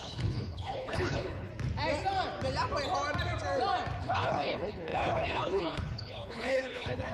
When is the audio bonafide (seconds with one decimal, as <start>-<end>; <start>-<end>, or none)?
1.5-4.0